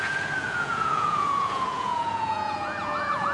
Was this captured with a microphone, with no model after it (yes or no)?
no